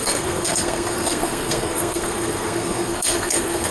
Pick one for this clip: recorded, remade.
remade